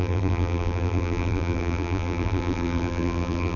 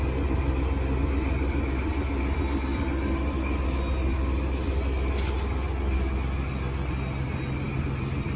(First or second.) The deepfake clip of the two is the first